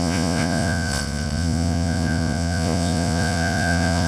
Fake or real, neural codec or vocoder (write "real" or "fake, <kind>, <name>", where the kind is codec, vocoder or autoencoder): fake, vocoder, Vocos